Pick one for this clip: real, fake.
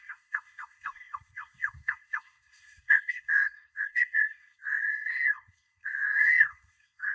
fake